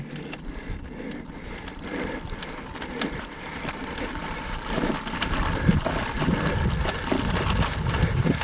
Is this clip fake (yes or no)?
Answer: yes